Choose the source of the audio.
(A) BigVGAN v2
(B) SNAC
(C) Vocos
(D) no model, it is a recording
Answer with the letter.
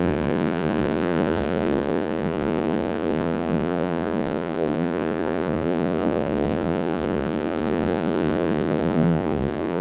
C